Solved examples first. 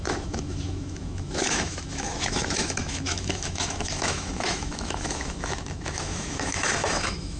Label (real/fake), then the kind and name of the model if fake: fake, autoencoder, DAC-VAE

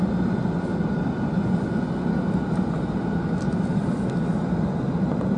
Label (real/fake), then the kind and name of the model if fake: real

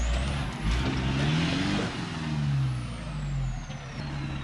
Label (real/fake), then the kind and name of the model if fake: real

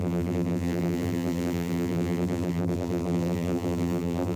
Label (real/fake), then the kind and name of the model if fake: fake, vocoder, BigVGAN v2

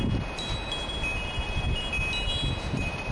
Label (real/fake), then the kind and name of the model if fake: real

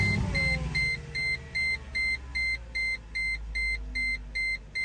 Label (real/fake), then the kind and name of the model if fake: real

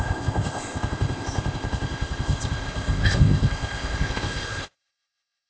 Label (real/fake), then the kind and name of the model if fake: fake, codec, ZipCodec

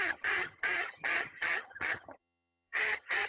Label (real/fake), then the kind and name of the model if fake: fake, vocoder, HiFi-GAN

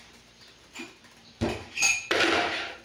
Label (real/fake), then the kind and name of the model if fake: fake, vocoder, BigVGAN v2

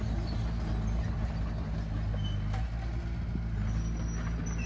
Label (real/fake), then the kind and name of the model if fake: real